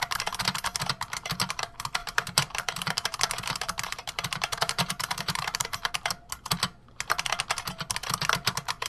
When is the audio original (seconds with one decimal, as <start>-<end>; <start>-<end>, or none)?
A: 0.0-2.0; 5.9-8.9